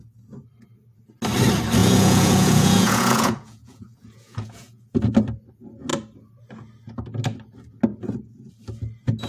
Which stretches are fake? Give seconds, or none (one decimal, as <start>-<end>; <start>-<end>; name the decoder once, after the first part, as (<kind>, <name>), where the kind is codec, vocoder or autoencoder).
1.8-4.8 (vocoder, Vocos)